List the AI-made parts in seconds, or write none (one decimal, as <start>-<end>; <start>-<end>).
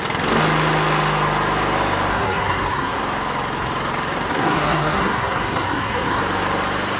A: 2.1-3.0; 4.3-6.2